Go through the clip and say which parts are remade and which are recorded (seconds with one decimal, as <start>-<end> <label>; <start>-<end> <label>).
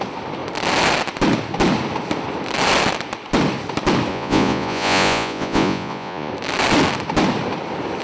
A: 0.0-4.1 recorded; 4.1-6.3 remade; 6.3-8.0 recorded